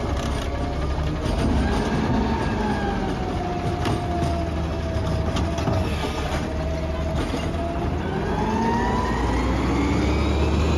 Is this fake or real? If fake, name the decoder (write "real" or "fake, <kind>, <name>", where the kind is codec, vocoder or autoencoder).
real